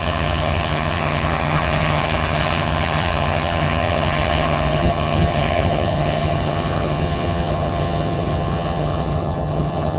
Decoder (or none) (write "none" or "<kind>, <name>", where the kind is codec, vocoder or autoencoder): vocoder, HiFi-GAN